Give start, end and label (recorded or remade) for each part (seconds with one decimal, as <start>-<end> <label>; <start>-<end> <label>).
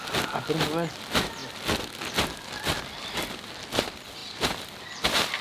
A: 0.0-5.4 recorded